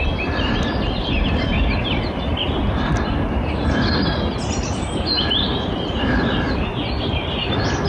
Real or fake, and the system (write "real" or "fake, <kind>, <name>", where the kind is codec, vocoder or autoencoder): real